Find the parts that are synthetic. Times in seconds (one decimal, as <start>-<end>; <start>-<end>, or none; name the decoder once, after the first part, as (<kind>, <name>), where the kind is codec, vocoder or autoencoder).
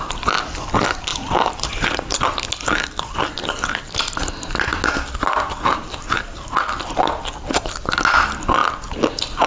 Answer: 1.1-2.2 (vocoder, BigVGAN v2)